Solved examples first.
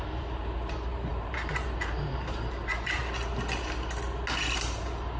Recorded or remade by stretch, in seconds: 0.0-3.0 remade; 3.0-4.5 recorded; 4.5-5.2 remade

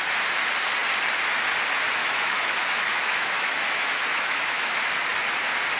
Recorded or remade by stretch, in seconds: 0.0-2.0 recorded; 2.0-4.9 remade; 4.9-5.8 recorded

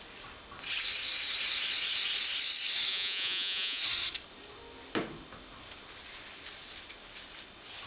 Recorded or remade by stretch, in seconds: 0.0-2.9 recorded; 2.9-3.8 remade; 3.8-7.9 recorded

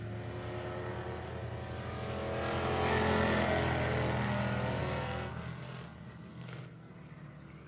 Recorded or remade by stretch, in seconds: 0.0-4.8 recorded; 4.8-5.3 remade; 5.3-6.3 recorded; 6.3-6.9 remade; 6.9-7.7 recorded

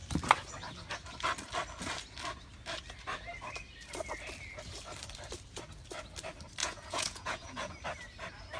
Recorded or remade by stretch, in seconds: 0.0-6.6 recorded; 6.6-7.8 remade; 7.8-8.6 recorded

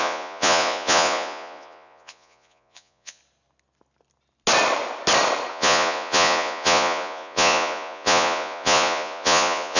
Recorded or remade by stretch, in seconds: 0.0-3.2 remade; 3.2-5.5 recorded; 5.5-9.8 remade

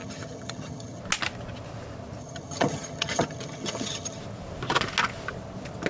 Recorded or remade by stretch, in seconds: 0.0-1.0 remade; 1.0-2.2 recorded; 2.2-4.2 remade; 4.2-5.9 recorded

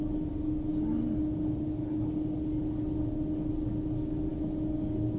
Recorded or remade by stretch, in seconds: 0.0-5.2 recorded